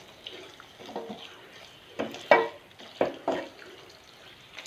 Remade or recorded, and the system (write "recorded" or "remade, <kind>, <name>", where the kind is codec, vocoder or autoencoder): recorded